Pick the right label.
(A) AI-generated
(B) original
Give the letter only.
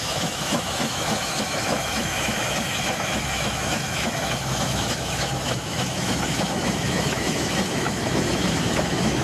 A